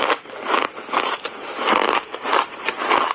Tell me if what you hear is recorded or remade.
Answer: recorded